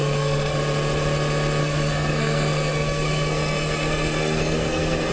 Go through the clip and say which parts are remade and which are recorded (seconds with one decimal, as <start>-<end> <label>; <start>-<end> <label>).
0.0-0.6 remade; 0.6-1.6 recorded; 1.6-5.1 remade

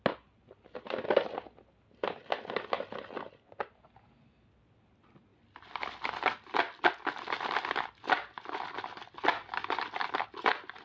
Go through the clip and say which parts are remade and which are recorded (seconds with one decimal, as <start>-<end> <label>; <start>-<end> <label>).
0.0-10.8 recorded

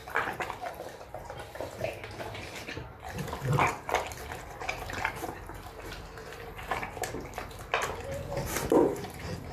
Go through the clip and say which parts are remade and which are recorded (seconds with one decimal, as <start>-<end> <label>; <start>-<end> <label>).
0.0-9.5 recorded

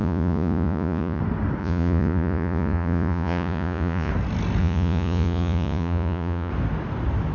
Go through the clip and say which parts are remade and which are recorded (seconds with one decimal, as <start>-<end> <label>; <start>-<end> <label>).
0.0-1.2 remade; 1.2-1.6 recorded; 1.6-4.1 remade; 4.1-4.6 recorded; 4.6-6.5 remade; 6.5-7.3 recorded

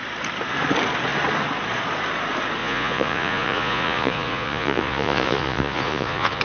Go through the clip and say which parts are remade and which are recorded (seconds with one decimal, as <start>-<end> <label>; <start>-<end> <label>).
0.0-2.6 recorded; 2.6-6.4 remade

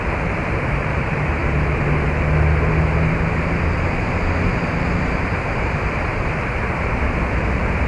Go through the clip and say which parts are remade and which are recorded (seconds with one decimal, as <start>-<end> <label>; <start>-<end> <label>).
0.0-1.4 remade; 1.4-5.6 recorded; 5.6-7.9 remade

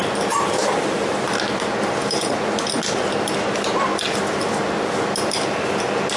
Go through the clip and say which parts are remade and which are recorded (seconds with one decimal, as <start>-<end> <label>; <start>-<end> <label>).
0.0-6.2 recorded